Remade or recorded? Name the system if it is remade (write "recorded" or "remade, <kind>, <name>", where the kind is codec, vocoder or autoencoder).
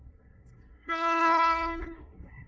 remade, codec, SNAC